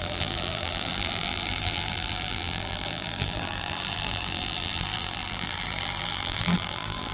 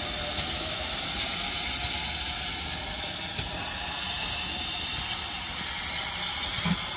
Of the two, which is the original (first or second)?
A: second